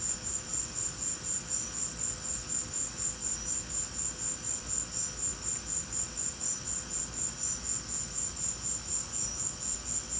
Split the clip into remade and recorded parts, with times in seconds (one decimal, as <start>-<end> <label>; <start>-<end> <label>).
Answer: 0.0-10.2 recorded